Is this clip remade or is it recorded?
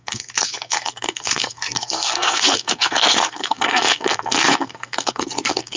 remade